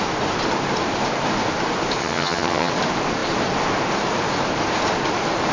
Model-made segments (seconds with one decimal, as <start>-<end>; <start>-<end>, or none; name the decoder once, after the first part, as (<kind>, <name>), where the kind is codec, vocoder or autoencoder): 2.0-2.7 (vocoder, HiFi-GAN)